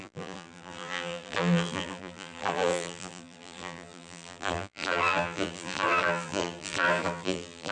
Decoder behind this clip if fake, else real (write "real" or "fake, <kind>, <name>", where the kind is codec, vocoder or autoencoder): fake, vocoder, BigVGAN v2